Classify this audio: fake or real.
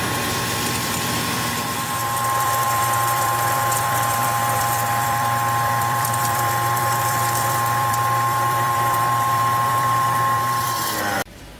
fake